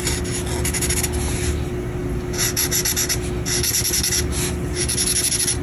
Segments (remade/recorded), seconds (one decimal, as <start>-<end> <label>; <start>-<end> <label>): 0.0-5.6 recorded

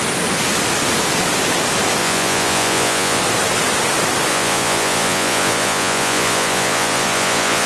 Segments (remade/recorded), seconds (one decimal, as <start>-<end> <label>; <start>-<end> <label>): 0.0-2.0 recorded; 2.0-3.2 remade; 3.2-4.3 recorded; 4.3-7.7 remade

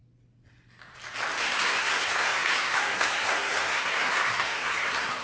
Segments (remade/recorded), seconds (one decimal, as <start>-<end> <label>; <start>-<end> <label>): 0.0-1.4 recorded; 1.4-5.2 remade